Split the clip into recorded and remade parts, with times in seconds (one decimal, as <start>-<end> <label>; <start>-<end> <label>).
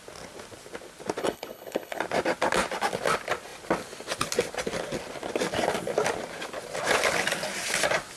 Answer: 0.0-1.2 recorded; 1.2-2.0 remade; 2.0-8.2 recorded